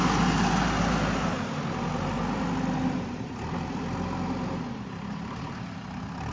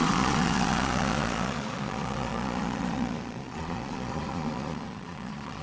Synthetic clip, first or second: second